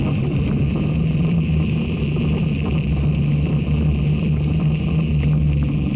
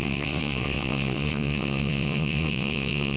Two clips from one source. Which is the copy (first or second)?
second